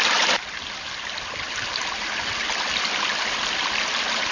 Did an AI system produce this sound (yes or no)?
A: no